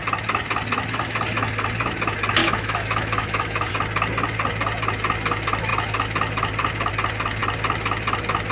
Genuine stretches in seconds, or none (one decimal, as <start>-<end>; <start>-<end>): 0.0-2.4; 3.7-8.5

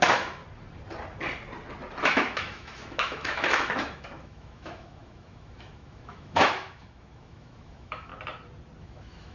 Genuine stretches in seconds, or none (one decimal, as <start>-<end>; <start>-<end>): 0.4-2.0; 8.1-8.8

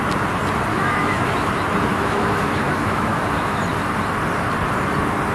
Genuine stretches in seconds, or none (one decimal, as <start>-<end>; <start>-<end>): 0.0-0.7; 1.5-1.9; 3.6-5.3

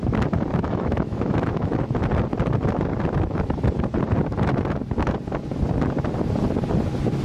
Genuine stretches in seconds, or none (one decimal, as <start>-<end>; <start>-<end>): 0.0-0.5; 1.8-7.2

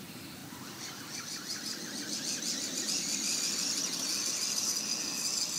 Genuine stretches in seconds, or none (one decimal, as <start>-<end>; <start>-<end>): 0.0-5.6